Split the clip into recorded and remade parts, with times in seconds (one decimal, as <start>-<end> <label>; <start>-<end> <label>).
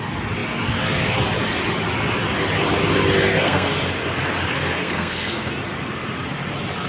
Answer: 0.0-3.3 recorded; 3.3-3.8 remade; 3.8-4.5 recorded; 4.5-5.5 remade; 5.5-6.9 recorded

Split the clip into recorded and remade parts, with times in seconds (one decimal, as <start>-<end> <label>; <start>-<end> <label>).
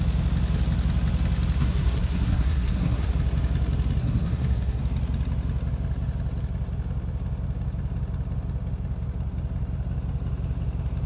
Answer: 0.0-1.6 recorded; 1.6-3.1 remade; 3.1-4.0 recorded; 4.0-4.8 remade; 4.8-11.1 recorded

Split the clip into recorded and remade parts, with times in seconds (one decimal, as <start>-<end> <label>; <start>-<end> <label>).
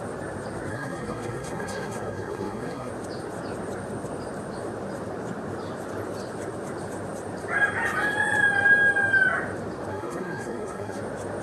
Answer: 0.0-0.7 recorded; 0.7-2.9 remade; 2.9-9.9 recorded; 9.9-11.0 remade; 11.0-11.4 recorded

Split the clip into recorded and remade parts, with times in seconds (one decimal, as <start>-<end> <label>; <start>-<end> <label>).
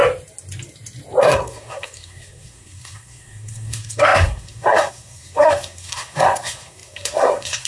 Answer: 0.0-1.2 recorded; 1.2-7.7 remade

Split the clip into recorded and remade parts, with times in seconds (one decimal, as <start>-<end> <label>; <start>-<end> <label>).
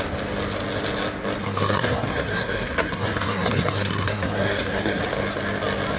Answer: 0.0-1.4 recorded; 1.4-5.0 remade; 5.0-6.0 recorded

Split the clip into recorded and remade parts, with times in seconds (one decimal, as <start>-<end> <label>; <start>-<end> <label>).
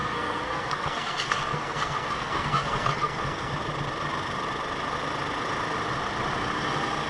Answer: 0.0-3.5 remade; 3.5-7.1 recorded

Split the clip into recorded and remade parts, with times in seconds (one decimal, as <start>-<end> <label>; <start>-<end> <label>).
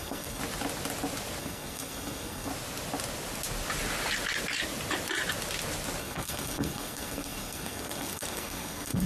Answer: 0.0-0.4 remade; 0.4-1.4 recorded; 1.4-2.5 remade; 2.5-6.0 recorded; 6.0-9.1 remade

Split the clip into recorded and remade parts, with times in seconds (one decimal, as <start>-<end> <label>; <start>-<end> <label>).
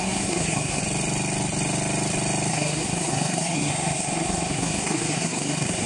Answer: 0.0-0.8 remade; 0.8-2.5 recorded; 2.5-5.9 remade